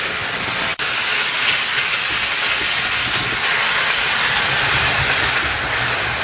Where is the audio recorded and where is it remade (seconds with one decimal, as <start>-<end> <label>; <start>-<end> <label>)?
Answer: 0.0-6.2 recorded